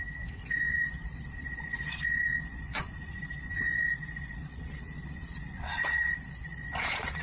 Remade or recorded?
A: remade